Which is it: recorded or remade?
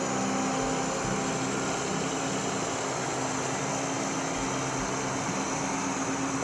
recorded